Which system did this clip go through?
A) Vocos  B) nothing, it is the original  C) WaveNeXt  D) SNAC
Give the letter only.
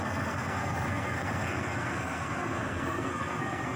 D